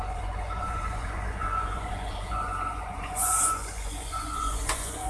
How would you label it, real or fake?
fake